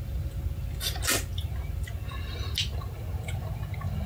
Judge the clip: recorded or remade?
recorded